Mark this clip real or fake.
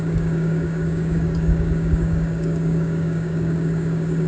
fake